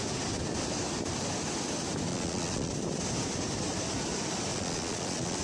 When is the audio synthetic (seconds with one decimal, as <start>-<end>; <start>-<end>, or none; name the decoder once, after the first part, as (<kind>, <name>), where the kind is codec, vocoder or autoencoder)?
2.1-2.7 (vocoder, Vocos); 4.5-5.4